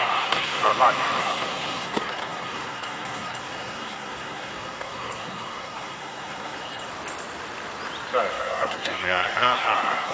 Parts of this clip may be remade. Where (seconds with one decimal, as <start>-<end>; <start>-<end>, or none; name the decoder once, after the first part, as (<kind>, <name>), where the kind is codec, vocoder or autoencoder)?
0.0-0.7 (codec, SNAC); 1.2-6.9; 8.3-10.1